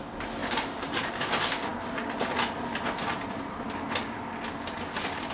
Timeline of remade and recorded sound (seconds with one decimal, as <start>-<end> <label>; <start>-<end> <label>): 0.0-0.4 recorded; 0.4-1.1 remade; 1.1-5.3 recorded